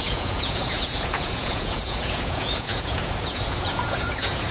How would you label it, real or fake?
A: fake